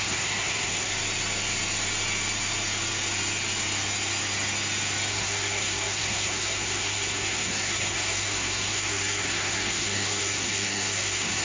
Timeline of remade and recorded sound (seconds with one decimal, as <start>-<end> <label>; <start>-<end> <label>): 0.0-0.9 remade; 0.9-5.1 recorded; 5.1-11.4 remade